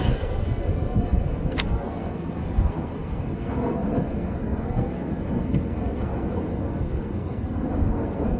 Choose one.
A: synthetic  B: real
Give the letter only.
A